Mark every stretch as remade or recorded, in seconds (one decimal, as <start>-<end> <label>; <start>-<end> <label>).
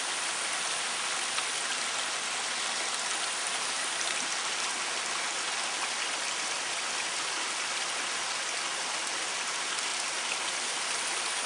0.0-11.5 recorded